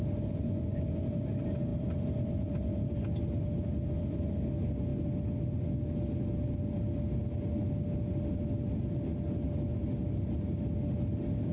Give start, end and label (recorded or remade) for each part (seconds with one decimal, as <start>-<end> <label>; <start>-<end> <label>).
0.0-11.5 recorded